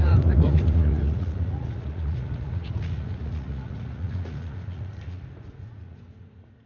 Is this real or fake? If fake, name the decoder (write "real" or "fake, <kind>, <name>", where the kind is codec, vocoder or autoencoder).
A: fake, vocoder, Vocos